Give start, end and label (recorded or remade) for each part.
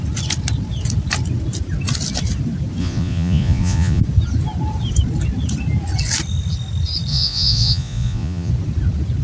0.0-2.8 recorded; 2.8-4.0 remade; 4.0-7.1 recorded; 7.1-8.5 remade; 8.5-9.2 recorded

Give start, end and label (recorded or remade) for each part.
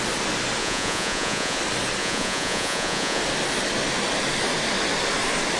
0.0-0.6 recorded; 0.6-1.6 remade; 1.6-2.0 recorded; 2.0-3.2 remade; 3.2-5.6 recorded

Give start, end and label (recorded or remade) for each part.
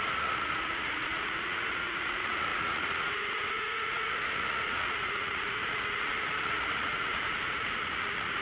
0.0-8.4 remade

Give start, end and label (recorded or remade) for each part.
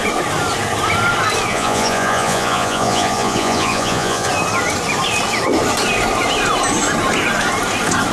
0.0-1.5 recorded; 1.5-4.3 remade; 4.3-8.1 recorded